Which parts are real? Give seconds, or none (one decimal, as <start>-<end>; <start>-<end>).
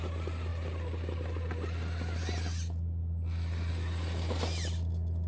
0.0-5.3